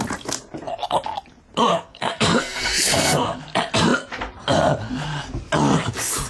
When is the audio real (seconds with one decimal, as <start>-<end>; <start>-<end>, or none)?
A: 0.0-1.7; 3.4-6.3